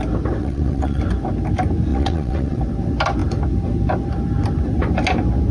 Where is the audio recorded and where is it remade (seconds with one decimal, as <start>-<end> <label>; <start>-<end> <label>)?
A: 0.0-0.4 recorded; 0.4-1.0 remade; 1.0-1.9 recorded; 1.9-2.6 remade; 2.6-5.5 recorded